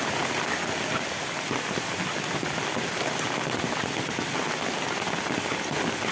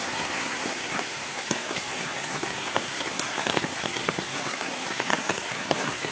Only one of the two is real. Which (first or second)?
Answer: first